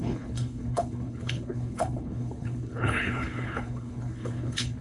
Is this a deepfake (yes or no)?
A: yes